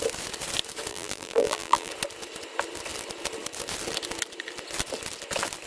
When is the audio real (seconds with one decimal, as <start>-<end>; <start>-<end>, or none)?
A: 0.0-0.9; 1.9-5.7